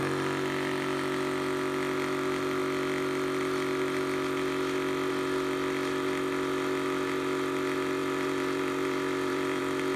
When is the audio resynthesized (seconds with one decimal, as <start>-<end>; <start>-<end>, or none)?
8.0-9.6